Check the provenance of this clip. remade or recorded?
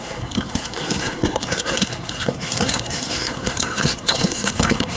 remade